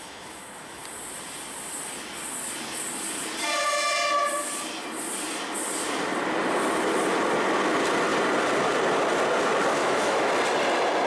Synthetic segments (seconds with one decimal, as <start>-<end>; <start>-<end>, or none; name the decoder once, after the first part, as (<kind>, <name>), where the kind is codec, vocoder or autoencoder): 0.0-0.8 (autoencoder, DAC-VAE); 9.8-10.3